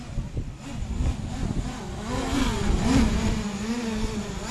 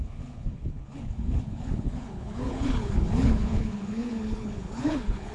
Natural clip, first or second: first